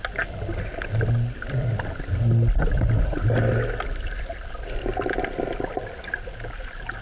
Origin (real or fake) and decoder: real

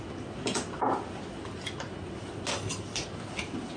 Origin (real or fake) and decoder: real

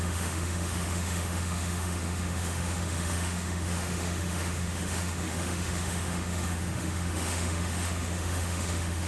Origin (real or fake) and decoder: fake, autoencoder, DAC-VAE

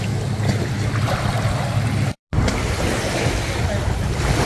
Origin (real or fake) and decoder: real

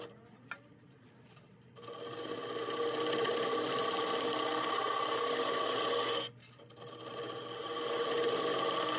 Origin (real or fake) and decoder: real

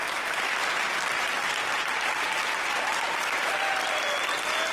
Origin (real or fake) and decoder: real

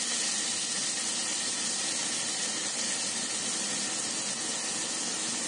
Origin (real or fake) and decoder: real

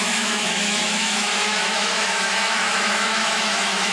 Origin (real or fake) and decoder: fake, autoencoder, DAC-VAE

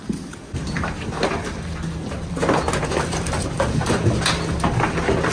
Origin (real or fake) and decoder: real